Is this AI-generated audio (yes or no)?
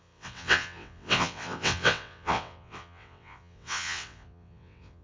yes